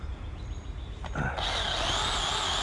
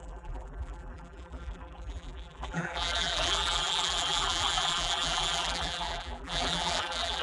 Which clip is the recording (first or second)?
first